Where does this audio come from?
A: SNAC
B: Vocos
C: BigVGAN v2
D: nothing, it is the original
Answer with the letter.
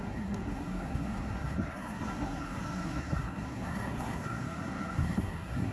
A